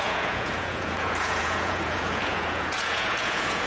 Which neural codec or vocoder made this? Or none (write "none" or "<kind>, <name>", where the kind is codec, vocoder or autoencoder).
vocoder, Vocos